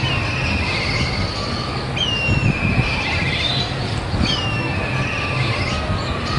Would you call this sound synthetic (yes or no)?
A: no